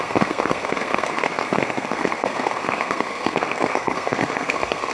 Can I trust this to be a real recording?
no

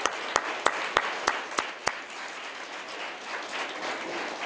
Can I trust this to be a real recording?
yes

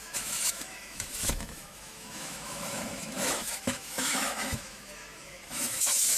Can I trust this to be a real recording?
no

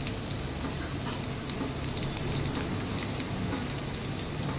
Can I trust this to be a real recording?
yes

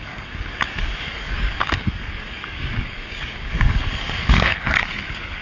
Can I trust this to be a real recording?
no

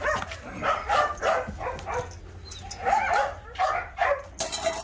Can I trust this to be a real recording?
yes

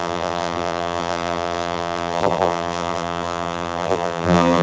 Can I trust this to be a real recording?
no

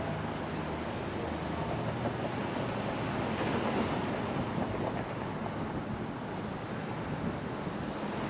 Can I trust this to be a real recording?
yes